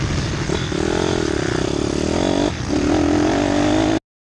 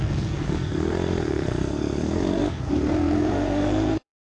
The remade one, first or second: second